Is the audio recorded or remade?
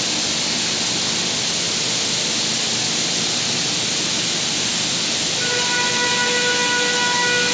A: recorded